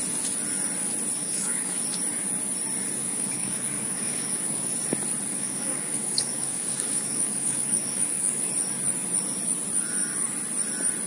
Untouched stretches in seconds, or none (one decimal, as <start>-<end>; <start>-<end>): 0.0-1.2; 1.8-3.0; 4.7-5.3; 8.5-11.1